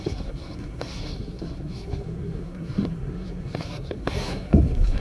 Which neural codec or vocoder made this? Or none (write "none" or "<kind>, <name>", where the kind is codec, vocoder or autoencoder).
codec, SNAC